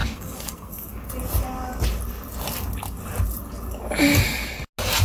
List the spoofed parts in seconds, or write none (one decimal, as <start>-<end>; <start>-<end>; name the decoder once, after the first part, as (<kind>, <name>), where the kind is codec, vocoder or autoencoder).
0.0-1.1 (codec, SNAC)